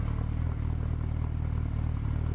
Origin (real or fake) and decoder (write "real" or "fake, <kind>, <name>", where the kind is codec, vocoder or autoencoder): real